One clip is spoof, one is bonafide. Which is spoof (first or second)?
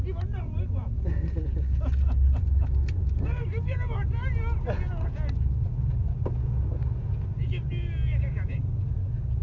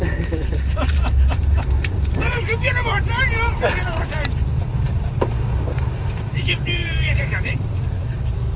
second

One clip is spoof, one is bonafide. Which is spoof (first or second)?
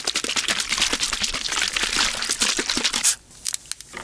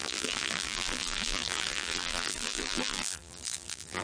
second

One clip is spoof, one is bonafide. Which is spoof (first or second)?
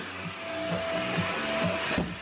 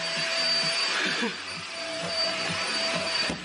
second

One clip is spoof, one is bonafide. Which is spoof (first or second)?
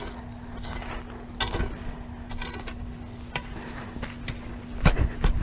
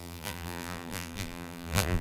second